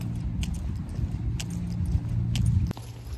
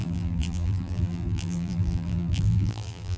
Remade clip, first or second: second